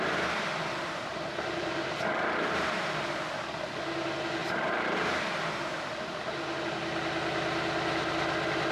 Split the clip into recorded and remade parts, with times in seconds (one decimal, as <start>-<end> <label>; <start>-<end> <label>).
0.0-1.1 recorded; 1.1-3.0 remade; 3.0-4.4 recorded; 4.4-5.2 remade; 5.2-8.7 recorded